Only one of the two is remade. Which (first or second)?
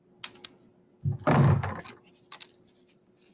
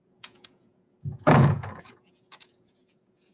second